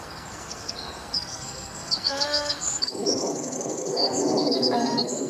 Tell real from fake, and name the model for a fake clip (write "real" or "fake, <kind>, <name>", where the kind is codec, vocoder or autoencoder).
fake, codec, SNAC